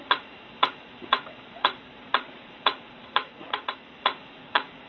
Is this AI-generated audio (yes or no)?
yes